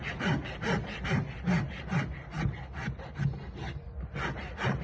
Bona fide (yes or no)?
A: yes